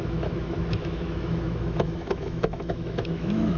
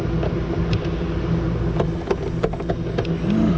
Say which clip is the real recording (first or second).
second